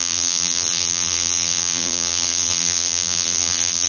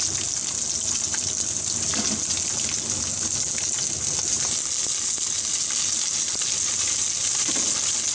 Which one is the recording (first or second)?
second